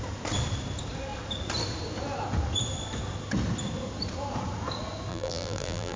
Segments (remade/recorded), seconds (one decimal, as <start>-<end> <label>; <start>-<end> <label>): 0.0-5.1 recorded; 5.1-6.0 remade